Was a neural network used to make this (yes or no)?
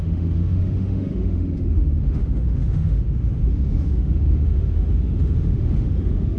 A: yes